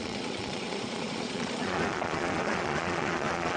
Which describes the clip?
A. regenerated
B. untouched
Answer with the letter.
A